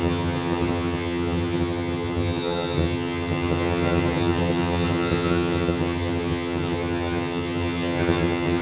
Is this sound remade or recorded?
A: remade